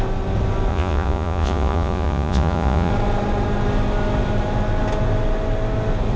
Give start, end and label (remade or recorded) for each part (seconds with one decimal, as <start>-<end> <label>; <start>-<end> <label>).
0.0-0.7 recorded; 0.7-2.9 remade; 2.9-6.2 recorded